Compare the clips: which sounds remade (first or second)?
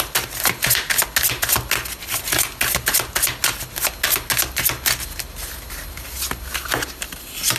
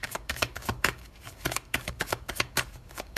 second